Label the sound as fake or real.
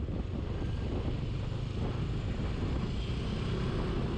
real